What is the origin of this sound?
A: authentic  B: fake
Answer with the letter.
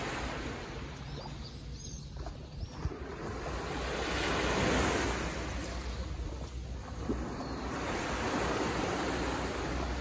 A